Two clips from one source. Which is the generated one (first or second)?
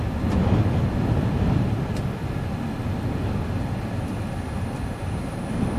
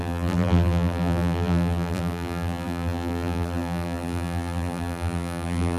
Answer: second